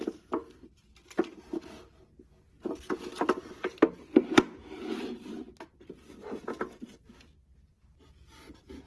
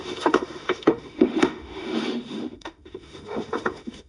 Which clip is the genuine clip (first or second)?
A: first